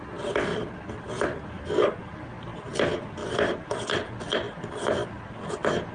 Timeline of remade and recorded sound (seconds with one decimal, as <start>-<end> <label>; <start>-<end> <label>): 0.0-0.5 recorded; 0.5-2.3 remade; 2.3-3.2 recorded; 3.2-5.5 remade; 5.5-5.9 recorded